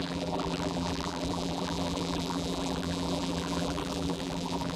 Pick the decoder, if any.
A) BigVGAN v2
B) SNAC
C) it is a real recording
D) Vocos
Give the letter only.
A